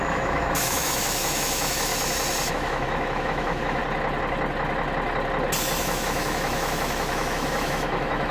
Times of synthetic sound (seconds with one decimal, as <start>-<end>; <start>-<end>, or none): 0.0-1.9; 2.5-3.8; 5.8-8.3